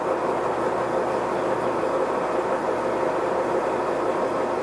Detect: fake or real real